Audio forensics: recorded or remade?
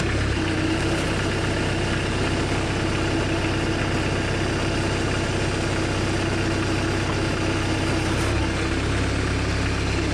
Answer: recorded